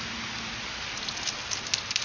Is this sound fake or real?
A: real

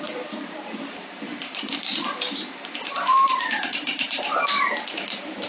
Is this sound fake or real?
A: fake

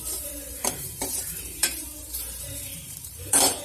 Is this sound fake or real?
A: fake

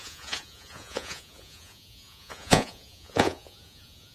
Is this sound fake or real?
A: fake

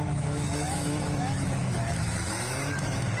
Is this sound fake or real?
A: fake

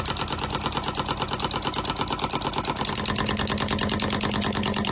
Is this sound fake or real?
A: real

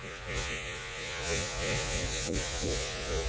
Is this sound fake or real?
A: fake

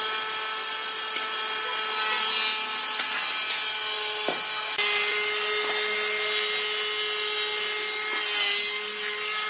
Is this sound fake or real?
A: real